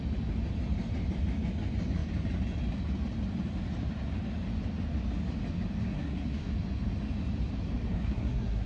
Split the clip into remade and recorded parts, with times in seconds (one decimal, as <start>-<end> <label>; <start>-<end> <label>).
0.0-5.8 recorded; 5.8-6.5 remade; 6.5-7.9 recorded; 7.9-8.7 remade